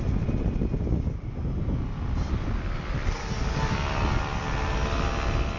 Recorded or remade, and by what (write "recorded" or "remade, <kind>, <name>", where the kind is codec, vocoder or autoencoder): recorded